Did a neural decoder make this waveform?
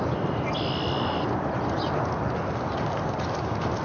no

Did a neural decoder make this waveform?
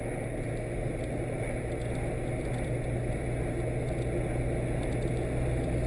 no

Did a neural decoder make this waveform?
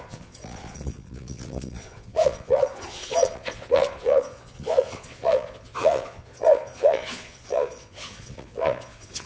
yes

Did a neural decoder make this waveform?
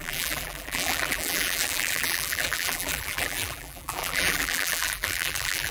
yes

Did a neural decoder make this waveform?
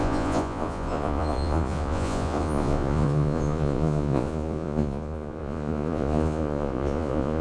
yes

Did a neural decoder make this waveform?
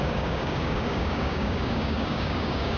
yes